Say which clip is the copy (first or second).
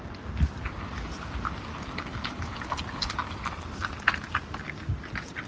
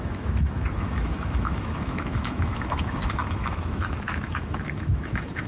second